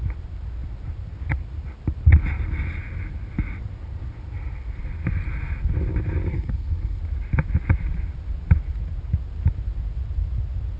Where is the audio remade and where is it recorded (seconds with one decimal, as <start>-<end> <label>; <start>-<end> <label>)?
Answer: 0.0-6.3 recorded; 6.3-7.0 remade; 7.0-10.8 recorded